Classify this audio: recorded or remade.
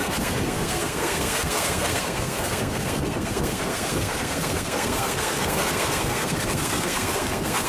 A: remade